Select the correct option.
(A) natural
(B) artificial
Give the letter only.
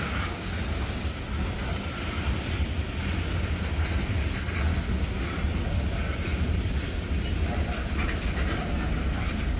A